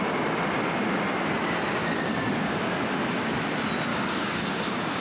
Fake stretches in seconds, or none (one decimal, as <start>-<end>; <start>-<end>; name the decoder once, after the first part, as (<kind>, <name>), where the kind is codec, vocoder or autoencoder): 1.8-2.7 (codec, DAC); 3.9-5.0